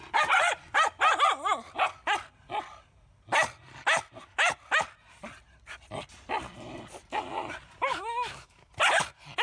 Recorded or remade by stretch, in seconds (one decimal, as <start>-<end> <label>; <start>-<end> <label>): 0.0-7.9 recorded; 7.9-8.7 remade; 8.7-9.4 recorded